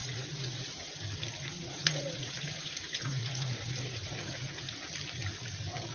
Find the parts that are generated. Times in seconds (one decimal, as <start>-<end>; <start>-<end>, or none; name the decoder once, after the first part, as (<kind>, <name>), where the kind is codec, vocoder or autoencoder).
0.0-0.9 (vocoder, Vocos); 1.4-4.9